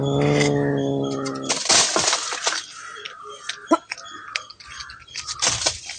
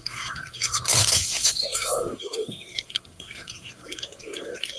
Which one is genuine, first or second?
first